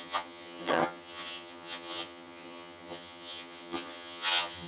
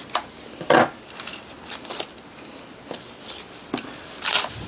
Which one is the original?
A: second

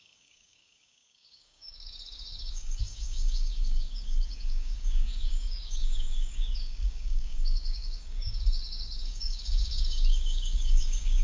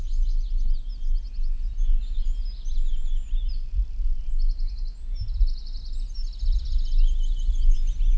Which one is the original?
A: second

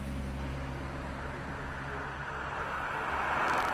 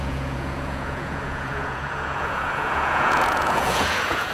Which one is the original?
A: first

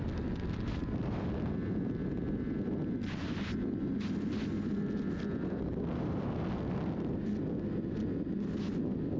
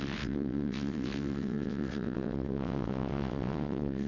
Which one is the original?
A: first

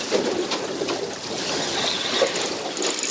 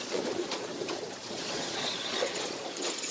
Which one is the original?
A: first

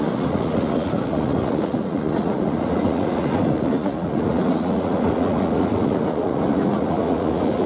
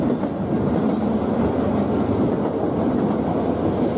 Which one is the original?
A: second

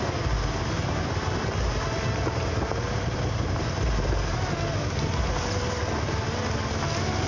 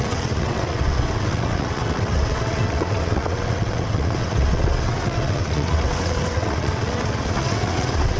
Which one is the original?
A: first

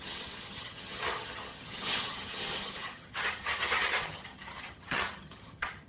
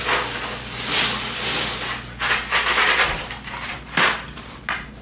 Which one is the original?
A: second